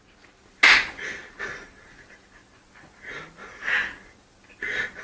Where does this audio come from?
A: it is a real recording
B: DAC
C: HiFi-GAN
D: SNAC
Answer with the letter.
A